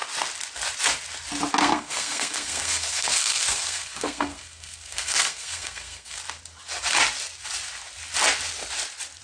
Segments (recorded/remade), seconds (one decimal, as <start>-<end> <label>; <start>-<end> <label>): 0.0-1.6 recorded; 1.6-6.2 remade; 6.2-9.2 recorded